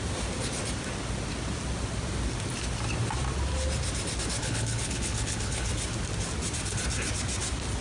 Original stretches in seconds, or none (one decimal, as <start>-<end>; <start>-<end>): 0.0-4.4; 5.7-7.8